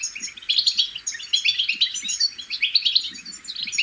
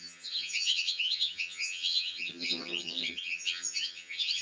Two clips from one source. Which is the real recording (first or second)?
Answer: first